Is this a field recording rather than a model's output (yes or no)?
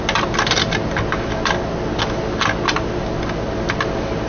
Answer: yes